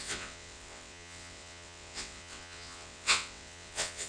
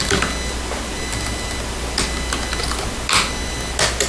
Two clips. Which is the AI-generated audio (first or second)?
first